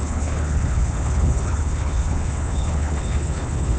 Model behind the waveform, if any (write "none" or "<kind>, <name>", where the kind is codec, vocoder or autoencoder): codec, HILCodec